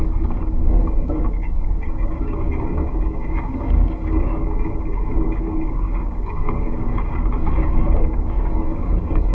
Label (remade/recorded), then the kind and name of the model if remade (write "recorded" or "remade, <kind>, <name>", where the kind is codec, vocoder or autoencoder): remade, codec, DAC